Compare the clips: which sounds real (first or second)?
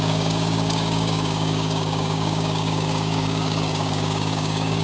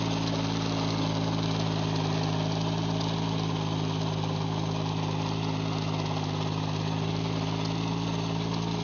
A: second